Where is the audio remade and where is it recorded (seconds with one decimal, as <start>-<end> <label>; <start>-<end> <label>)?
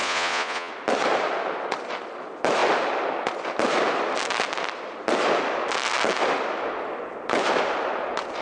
0.0-0.7 remade; 0.7-8.4 recorded